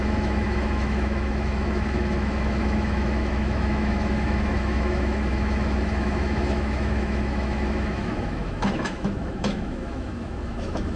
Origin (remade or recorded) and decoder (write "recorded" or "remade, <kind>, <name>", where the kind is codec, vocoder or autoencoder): remade, autoencoder, DAC-VAE